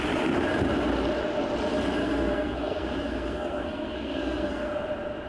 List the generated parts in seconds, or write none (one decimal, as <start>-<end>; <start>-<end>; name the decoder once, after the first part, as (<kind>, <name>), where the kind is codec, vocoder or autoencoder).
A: 2.0-4.7 (codec, SNAC)